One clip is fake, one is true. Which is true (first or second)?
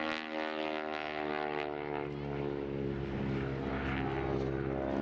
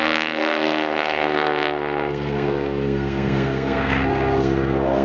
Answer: first